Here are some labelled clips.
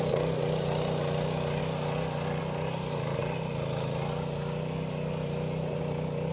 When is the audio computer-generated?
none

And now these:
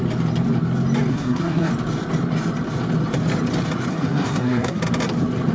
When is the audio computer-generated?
1.1-1.7; 3.9-4.8

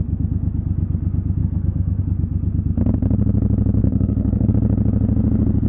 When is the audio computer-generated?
1.4-2.0; 3.8-4.5

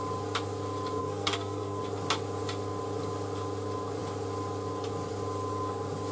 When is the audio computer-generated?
1.0-1.8

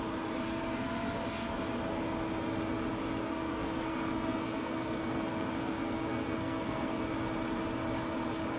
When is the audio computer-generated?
3.2-7.0

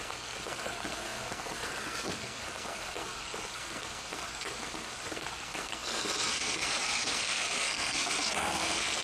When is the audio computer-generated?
0.0-9.0